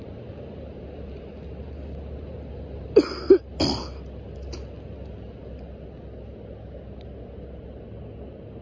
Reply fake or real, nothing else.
real